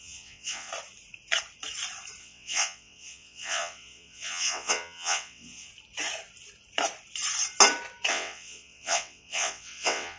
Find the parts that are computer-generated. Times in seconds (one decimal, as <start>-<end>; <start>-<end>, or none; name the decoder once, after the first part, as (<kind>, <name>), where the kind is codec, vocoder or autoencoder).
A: 0.0-0.7 (vocoder, WaveNeXt); 2.2-5.7; 8.1-10.2